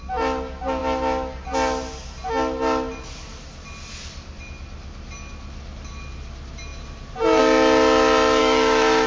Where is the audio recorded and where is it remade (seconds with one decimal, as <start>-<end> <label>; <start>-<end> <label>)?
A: 0.0-8.4 recorded; 8.4-9.1 remade